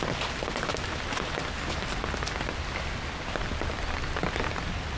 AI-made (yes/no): no